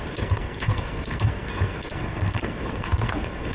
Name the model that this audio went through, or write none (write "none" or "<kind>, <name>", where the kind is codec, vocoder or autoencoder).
codec, SNAC